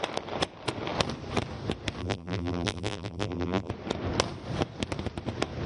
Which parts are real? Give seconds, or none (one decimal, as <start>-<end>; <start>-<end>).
0.0-2.0; 3.7-5.7